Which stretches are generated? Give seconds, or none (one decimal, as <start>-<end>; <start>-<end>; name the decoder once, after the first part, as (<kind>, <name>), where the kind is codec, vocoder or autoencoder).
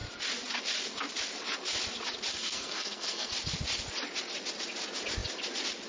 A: 2.3-3.3 (codec, SNAC)